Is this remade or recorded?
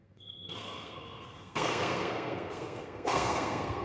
remade